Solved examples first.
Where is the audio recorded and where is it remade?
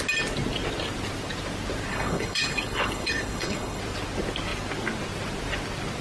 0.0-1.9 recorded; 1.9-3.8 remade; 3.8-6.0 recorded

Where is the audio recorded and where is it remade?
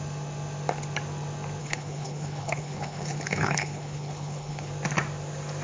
0.0-1.6 recorded; 1.6-4.7 remade; 4.7-5.6 recorded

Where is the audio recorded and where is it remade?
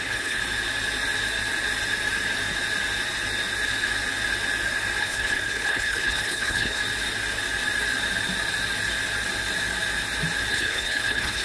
0.0-0.4 remade; 0.4-5.0 recorded; 5.0-6.8 remade; 6.8-10.5 recorded; 10.5-11.4 remade